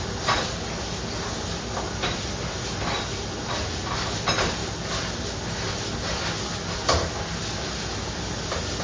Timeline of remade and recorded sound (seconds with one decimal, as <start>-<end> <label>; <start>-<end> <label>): 0.0-8.8 recorded